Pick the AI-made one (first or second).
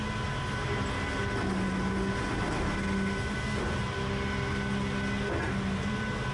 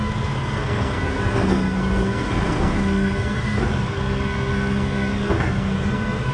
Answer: second